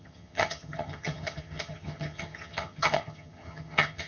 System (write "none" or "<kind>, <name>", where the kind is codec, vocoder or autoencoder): vocoder, HiFi-GAN